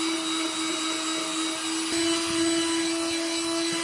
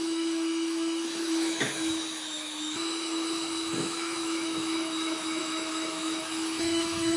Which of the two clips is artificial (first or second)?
second